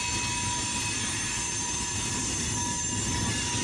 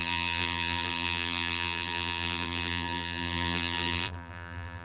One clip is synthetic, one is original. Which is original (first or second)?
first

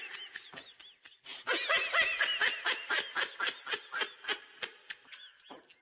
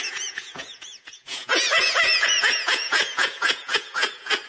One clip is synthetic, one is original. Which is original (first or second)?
first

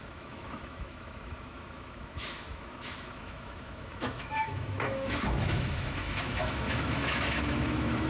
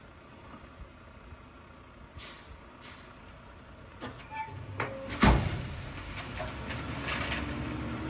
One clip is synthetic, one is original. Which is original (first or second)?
second